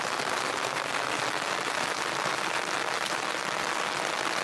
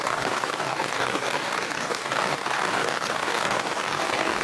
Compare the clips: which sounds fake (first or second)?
second